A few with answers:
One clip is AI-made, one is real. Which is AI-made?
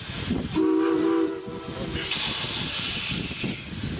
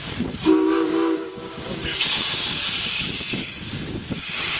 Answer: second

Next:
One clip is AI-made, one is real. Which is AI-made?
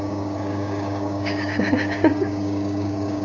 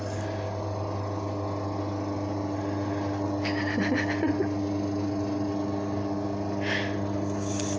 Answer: first